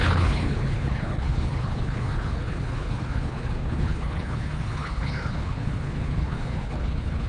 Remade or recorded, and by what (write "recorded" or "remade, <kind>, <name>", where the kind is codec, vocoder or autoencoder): remade, codec, HILCodec